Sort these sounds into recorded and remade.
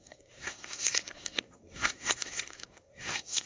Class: remade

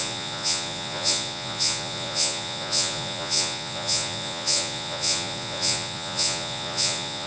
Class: remade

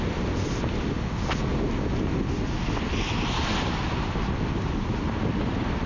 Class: recorded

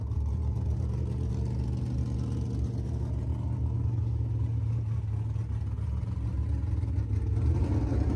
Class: recorded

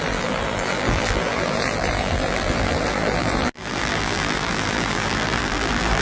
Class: remade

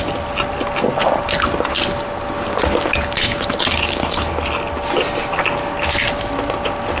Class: recorded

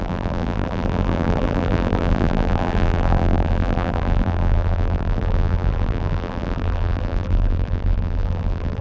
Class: remade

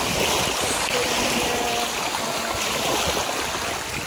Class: recorded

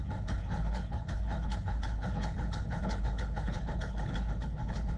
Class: remade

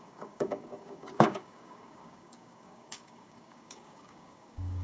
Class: remade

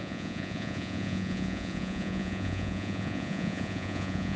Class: remade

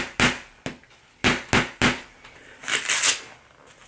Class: recorded